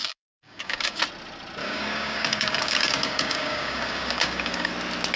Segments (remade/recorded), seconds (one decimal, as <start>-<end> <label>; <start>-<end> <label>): 0.0-1.0 remade; 1.0-1.6 recorded; 1.6-4.7 remade; 4.7-5.2 recorded